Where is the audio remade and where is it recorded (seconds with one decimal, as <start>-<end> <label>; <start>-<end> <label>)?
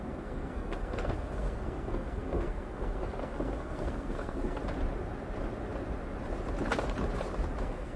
0.0-4.6 remade; 4.6-7.6 recorded; 7.6-8.0 remade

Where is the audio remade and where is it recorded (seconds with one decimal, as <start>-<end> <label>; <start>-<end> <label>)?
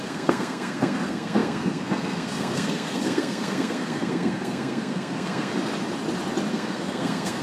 0.0-5.5 remade; 5.5-6.5 recorded; 6.5-7.4 remade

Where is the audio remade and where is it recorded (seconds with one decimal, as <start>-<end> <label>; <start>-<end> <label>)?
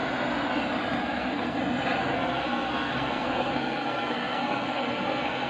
0.0-1.0 recorded; 1.0-1.6 remade; 1.6-2.0 recorded; 2.0-5.5 remade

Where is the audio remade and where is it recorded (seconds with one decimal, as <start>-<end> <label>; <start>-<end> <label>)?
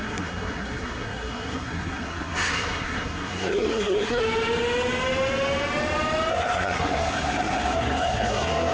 0.0-4.2 remade; 4.2-6.3 recorded; 6.3-8.7 remade